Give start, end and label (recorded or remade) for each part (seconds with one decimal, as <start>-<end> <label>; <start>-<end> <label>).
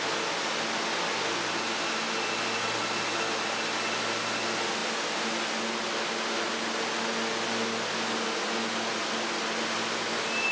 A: 0.0-10.5 recorded